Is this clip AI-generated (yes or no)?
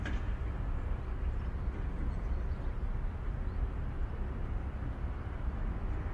no